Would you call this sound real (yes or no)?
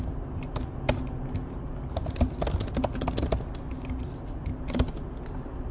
yes